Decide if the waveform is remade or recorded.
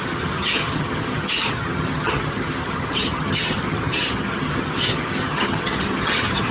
remade